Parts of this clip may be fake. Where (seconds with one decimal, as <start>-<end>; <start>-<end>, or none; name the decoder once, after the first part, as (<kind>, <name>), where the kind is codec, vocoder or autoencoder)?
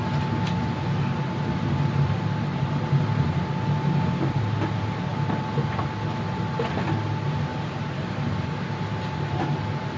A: none